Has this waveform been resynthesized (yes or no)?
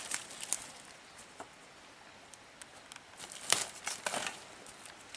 no